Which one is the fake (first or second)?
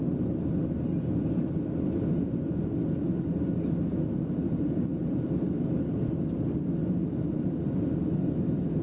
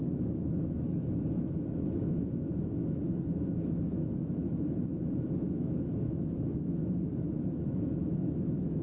second